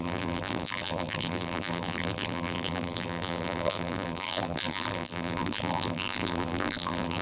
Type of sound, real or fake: fake